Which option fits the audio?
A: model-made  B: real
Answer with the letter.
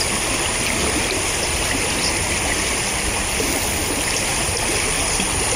B